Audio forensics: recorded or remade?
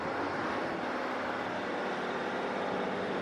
recorded